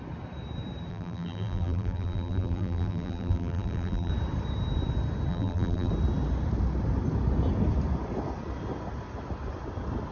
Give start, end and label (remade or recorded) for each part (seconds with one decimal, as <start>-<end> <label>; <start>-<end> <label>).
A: 0.0-0.9 recorded; 0.9-4.1 remade; 4.1-5.3 recorded; 5.3-5.9 remade; 5.9-10.1 recorded